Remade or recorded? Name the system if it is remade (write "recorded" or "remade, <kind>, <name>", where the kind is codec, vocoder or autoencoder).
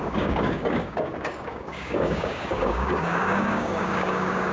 remade, codec, DAC